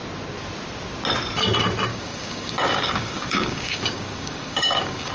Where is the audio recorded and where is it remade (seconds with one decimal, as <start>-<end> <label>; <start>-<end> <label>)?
0.0-1.9 recorded; 1.9-5.1 remade